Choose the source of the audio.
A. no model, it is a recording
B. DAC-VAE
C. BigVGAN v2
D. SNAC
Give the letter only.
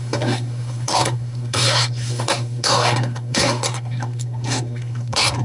D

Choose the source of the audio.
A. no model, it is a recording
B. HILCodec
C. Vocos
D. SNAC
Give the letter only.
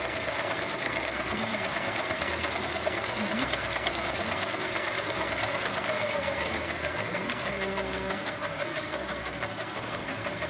D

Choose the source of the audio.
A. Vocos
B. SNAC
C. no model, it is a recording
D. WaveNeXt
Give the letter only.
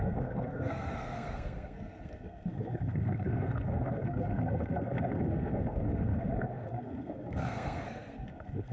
B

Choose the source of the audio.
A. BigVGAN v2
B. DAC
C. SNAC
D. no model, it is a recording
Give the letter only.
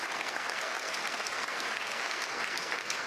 C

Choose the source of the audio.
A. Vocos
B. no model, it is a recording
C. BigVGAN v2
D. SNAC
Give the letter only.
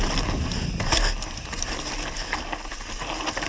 B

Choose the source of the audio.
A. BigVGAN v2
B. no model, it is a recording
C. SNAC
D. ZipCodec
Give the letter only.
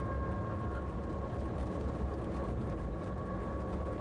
B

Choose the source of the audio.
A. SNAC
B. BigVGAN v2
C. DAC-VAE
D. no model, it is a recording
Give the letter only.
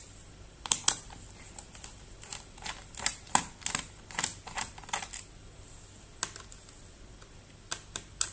D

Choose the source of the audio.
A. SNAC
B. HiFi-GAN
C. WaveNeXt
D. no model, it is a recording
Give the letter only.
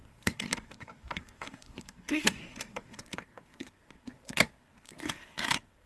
A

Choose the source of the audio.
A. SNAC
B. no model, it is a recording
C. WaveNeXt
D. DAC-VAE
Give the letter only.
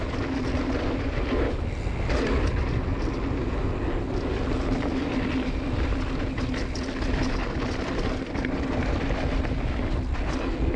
B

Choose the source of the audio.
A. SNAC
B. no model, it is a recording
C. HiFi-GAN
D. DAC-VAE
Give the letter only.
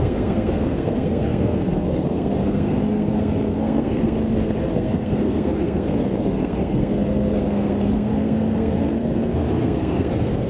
A